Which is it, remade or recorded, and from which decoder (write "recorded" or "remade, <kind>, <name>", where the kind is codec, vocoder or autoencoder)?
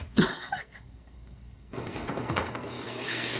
remade, codec, SNAC